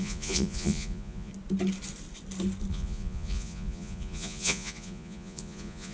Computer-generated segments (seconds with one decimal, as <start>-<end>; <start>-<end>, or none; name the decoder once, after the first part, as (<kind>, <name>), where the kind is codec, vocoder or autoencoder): 0.0-1.3 (vocoder, Vocos); 2.7-5.9